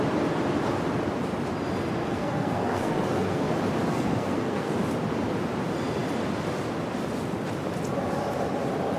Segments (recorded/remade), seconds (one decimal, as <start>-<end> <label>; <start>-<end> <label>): 0.0-2.0 recorded; 2.0-3.5 remade; 3.5-3.9 recorded; 3.9-4.7 remade; 4.7-9.0 recorded